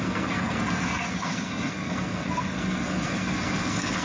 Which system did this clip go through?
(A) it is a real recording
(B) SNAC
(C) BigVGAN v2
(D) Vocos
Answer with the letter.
B